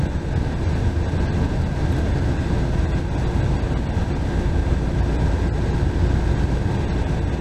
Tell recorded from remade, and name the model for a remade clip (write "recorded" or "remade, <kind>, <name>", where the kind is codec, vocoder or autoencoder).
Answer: recorded